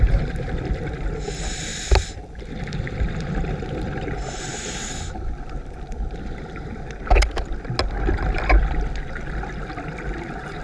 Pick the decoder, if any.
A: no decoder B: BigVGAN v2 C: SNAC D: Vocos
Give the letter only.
A